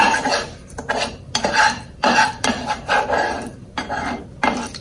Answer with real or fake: fake